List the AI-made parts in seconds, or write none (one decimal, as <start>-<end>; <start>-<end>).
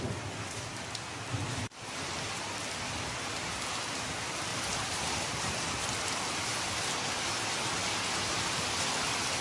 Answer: 4.5-6.6